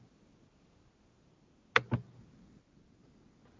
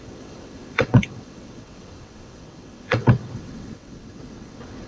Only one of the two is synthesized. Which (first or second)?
second